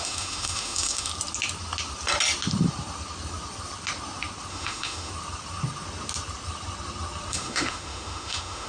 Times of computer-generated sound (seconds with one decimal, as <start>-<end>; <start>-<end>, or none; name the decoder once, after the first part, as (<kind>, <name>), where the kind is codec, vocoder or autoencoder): 0.0-1.1 (autoencoder, DAC-VAE); 4.5-5.1; 7.3-8.7